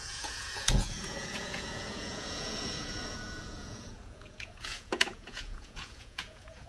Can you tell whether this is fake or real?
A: fake